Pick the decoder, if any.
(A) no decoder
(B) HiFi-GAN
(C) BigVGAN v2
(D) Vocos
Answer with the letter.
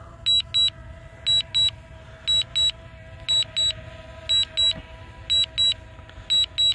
A